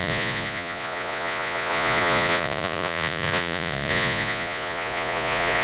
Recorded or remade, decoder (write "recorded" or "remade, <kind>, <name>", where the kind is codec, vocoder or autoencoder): remade, vocoder, Vocos